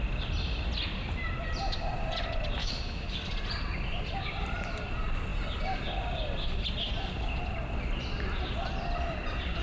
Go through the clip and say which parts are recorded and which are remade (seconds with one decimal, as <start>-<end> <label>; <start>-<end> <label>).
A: 0.0-2.6 recorded; 2.6-3.2 remade; 3.2-9.6 recorded